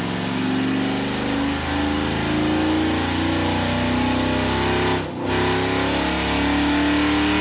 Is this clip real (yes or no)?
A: yes